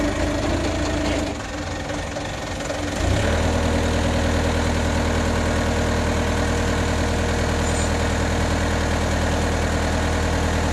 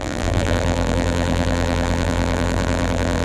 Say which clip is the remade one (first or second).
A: second